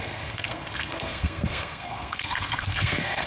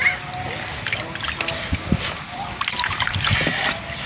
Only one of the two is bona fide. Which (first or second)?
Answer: second